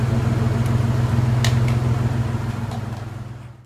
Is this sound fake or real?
real